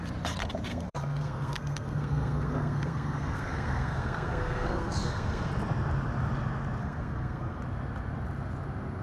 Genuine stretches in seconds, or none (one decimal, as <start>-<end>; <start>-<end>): 0.0-0.7; 5.5-6.8; 7.6-9.0